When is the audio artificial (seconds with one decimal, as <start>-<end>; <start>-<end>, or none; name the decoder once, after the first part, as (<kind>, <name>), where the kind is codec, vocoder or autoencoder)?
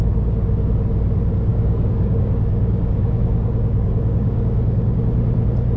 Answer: 1.5-5.0 (codec, DAC)